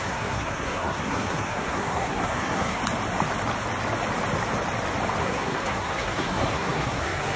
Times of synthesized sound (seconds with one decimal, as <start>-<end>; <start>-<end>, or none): 0.0-2.8; 5.2-7.4